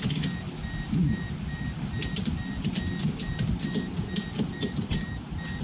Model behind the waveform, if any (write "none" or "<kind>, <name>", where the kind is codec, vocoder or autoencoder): none